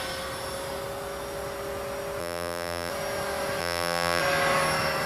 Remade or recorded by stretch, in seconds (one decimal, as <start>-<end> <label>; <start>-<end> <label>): 0.0-2.2 recorded; 2.2-2.9 remade; 2.9-3.6 recorded; 3.6-4.2 remade; 4.2-5.1 recorded